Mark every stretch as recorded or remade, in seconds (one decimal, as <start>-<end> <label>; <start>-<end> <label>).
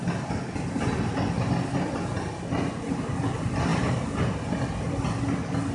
0.0-5.7 recorded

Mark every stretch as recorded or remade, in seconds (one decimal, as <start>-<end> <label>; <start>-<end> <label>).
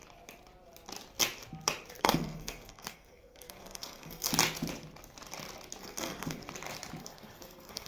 0.0-2.0 recorded; 2.0-4.3 remade; 4.3-5.8 recorded; 5.8-6.4 remade; 6.4-7.0 recorded; 7.0-7.9 remade